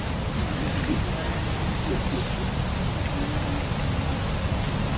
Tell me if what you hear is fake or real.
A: real